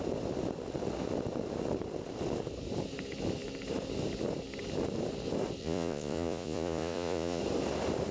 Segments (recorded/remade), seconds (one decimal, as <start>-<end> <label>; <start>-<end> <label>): 0.0-5.6 recorded; 5.6-7.4 remade; 7.4-8.1 recorded